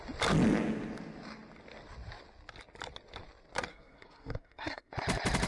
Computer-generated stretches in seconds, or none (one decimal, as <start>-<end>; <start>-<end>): 3.7-4.9